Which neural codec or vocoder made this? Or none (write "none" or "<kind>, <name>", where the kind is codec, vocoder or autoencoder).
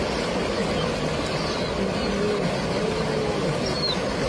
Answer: none